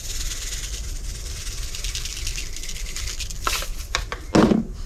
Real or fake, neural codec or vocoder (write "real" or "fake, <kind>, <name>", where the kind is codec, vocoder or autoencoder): real